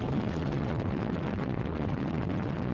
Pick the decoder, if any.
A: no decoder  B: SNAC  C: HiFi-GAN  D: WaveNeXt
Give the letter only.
D